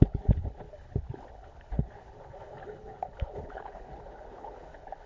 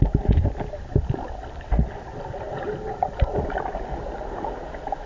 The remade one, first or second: first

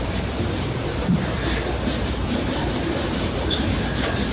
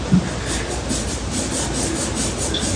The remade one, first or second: first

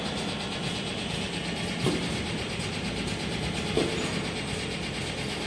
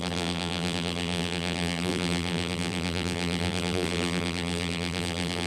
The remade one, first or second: second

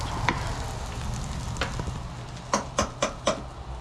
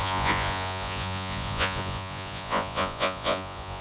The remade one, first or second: second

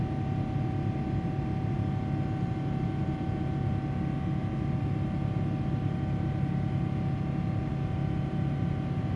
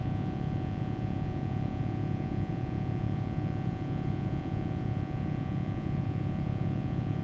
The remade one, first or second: second